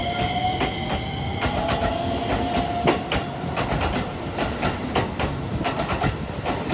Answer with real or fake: real